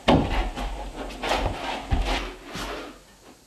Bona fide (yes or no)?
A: yes